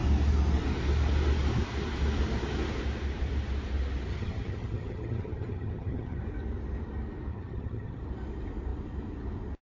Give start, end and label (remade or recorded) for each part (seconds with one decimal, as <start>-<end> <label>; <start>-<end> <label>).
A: 0.0-4.1 recorded; 4.1-6.2 remade; 6.2-7.3 recorded; 7.3-8.0 remade; 8.0-9.7 recorded